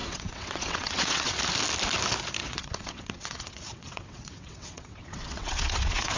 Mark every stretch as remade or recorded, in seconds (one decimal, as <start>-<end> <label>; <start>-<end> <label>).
0.0-1.4 remade; 1.4-2.4 recorded; 2.4-6.2 remade